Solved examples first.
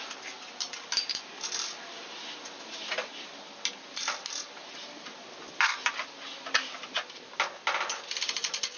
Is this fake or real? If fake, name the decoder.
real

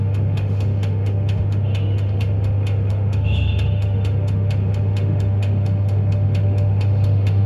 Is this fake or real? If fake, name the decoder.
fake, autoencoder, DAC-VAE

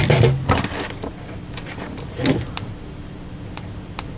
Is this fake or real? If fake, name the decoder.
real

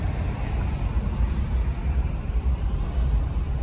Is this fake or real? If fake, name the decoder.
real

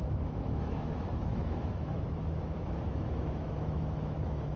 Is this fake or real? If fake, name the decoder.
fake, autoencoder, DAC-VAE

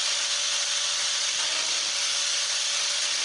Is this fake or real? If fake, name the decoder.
real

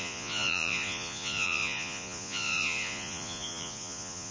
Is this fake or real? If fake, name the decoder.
fake, vocoder, Vocos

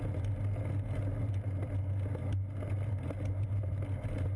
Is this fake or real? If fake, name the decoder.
real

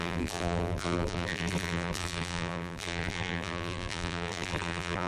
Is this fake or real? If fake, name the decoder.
fake, vocoder, BigVGAN v2